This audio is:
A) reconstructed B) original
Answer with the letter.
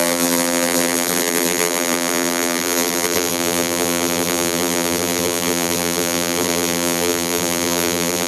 A